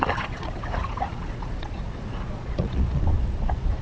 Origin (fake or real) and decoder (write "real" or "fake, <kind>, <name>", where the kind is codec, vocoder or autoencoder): fake, vocoder, Vocos